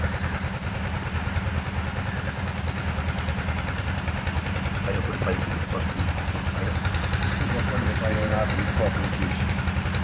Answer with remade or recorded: recorded